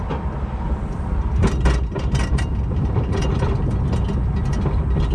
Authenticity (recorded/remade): recorded